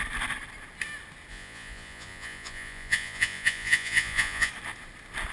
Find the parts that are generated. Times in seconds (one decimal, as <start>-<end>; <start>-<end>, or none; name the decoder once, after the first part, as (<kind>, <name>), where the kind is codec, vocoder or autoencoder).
1.3-4.5 (vocoder, Vocos)